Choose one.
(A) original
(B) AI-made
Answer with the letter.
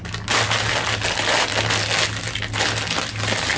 A